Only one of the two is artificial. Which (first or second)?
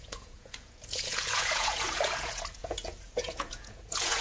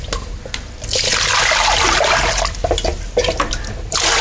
first